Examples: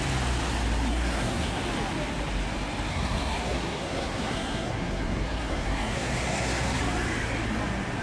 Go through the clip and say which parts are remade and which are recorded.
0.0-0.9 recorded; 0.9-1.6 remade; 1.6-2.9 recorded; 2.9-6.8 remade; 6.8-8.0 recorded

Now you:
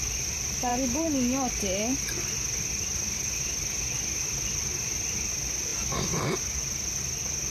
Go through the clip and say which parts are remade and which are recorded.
0.0-7.5 recorded

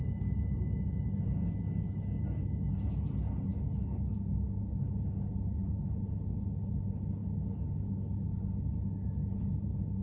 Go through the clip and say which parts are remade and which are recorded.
0.0-10.0 recorded